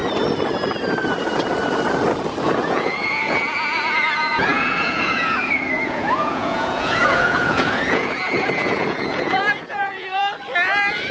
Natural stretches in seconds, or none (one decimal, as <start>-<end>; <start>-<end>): 0.0-2.4; 10.2-11.1